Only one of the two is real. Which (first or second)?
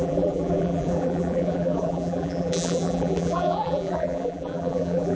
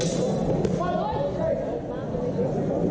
second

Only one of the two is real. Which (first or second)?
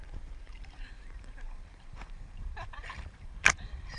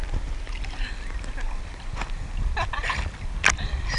second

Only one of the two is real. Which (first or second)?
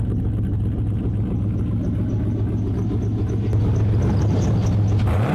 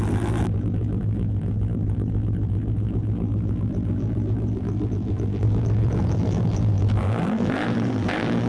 first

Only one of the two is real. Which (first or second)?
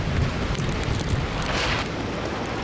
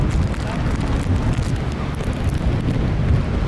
second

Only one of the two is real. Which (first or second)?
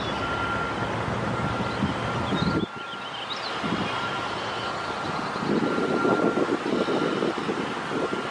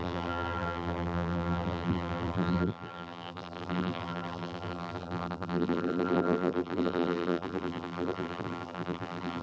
first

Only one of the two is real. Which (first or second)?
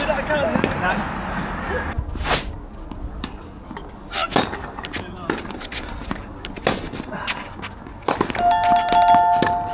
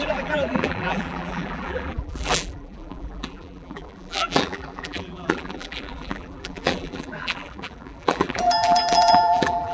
first